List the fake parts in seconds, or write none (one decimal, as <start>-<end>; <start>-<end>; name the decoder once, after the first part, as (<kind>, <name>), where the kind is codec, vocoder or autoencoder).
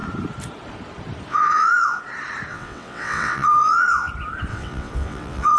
1.3-2.0 (vocoder, WaveNeXt); 2.5-4.1; 4.5-5.6